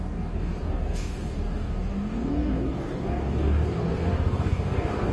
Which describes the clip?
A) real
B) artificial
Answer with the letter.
B